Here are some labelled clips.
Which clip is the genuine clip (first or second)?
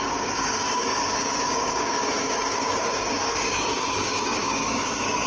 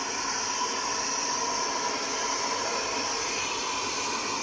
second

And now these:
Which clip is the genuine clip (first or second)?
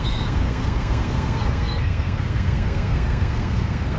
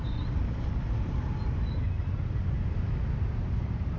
second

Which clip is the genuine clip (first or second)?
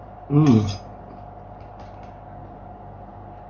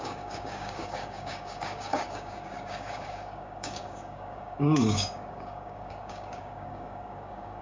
first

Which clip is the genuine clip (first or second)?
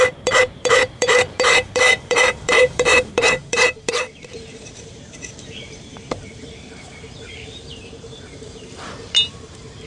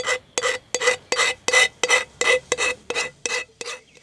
second